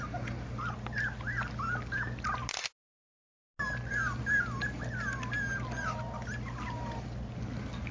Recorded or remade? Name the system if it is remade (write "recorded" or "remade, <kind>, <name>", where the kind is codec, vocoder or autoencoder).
recorded